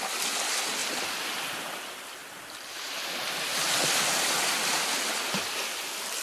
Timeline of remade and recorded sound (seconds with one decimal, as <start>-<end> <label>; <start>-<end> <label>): 0.0-6.2 recorded